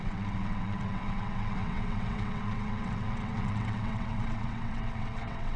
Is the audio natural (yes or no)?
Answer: no